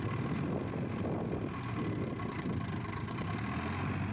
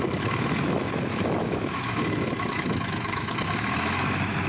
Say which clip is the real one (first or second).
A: first